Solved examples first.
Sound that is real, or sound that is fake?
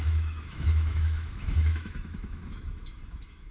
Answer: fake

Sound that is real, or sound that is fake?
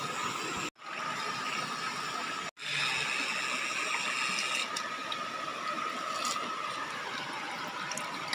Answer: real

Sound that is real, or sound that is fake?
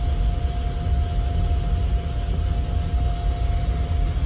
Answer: real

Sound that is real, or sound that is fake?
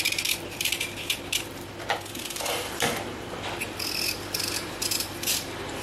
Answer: fake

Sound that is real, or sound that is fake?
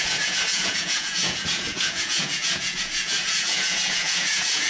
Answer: fake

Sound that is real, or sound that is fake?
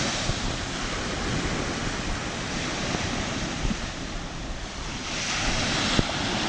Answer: real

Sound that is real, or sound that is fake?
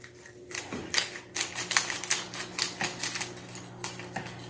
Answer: real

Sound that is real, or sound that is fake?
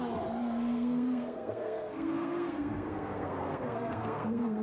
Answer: fake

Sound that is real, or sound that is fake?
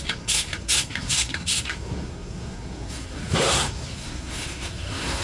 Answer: fake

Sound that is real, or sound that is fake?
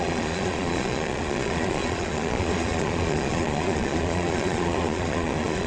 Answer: fake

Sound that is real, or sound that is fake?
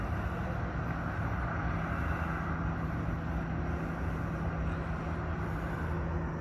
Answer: real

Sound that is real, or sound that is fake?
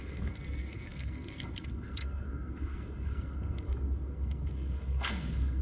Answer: fake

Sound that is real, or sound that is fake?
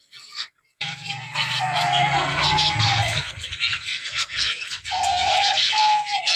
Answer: fake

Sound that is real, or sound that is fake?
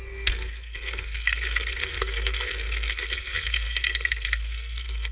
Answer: fake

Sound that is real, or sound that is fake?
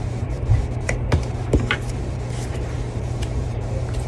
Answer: fake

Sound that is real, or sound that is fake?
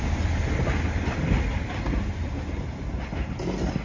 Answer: real